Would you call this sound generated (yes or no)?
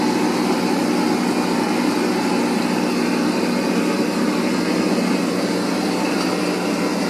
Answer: no